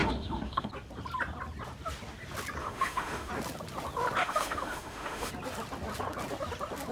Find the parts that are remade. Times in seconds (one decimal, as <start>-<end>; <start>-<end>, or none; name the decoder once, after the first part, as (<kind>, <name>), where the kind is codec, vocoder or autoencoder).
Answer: 0.0-0.7 (autoencoder, DAC-VAE); 2.6-3.3; 4.2-5.3